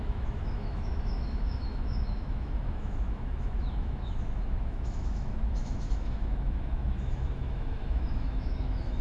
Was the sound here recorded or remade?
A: remade